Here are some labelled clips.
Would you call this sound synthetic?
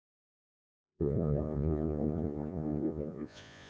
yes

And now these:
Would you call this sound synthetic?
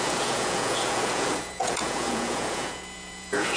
yes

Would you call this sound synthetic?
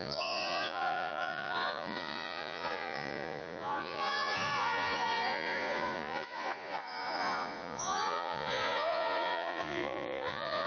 yes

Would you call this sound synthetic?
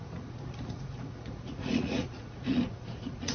yes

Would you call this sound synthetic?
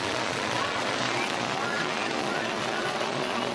yes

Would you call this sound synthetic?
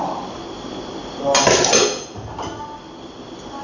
no